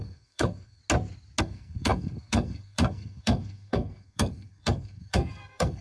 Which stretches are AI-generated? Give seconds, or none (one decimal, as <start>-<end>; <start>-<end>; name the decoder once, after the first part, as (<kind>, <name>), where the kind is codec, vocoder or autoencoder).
0.0-0.8 (codec, SNAC); 1.4-5.8